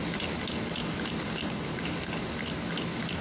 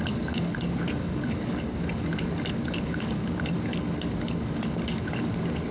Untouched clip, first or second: first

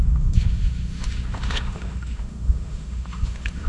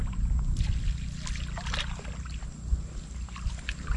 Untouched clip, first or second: second